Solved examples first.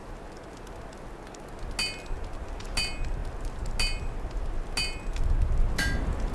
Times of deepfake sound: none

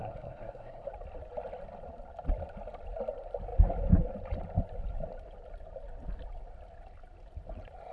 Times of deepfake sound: 0.0-0.9 (codec, SNAC)

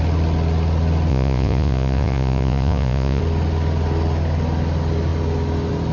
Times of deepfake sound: 1.1-3.2 (vocoder, Vocos)

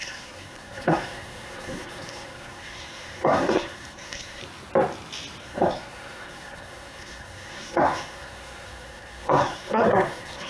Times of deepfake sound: 0.0-4.4 (codec, SNAC); 5.4-10.5

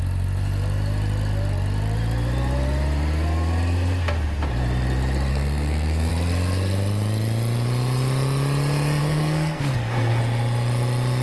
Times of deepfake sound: 5.3-6.1 (codec, SNAC); 9.0-10.2

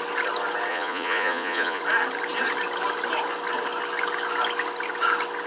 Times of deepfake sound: 0.7-1.8 (vocoder, Vocos)

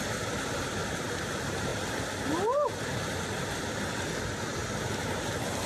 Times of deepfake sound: 0.0-1.7 (vocoder, BigVGAN v2); 4.0-4.6